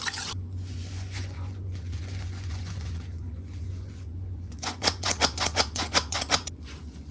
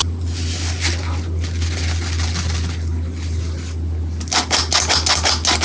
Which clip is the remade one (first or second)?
first